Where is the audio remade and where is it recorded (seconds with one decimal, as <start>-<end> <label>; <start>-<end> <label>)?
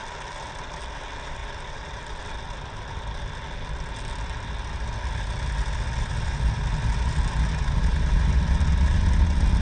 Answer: 0.0-9.6 recorded